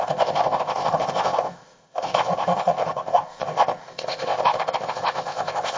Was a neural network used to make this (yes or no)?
yes